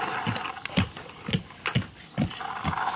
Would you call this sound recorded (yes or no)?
yes